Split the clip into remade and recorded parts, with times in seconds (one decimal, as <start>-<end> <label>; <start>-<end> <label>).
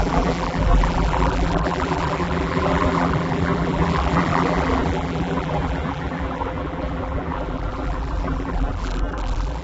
0.0-9.6 remade